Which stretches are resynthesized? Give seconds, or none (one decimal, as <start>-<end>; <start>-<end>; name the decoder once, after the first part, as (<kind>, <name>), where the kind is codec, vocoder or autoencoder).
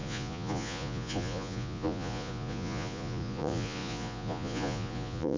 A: 0.0-5.4 (vocoder, Vocos)